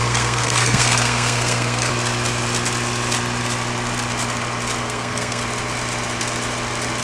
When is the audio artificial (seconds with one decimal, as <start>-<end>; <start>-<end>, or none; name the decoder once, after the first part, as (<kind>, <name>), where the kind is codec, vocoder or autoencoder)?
0.0-1.9 (codec, SNAC); 4.8-5.4